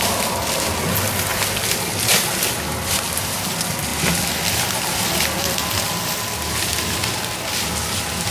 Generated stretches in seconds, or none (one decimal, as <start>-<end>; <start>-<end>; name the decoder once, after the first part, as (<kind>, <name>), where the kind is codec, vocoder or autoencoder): none